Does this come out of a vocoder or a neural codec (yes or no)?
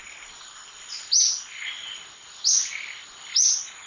no